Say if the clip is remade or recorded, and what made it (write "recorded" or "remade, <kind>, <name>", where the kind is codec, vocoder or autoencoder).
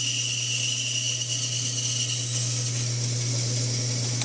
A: recorded